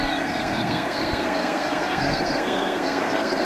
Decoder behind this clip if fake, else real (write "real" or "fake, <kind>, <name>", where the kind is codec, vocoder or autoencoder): fake, codec, SNAC